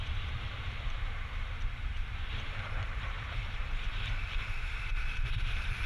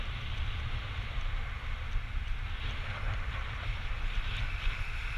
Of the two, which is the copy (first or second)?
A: first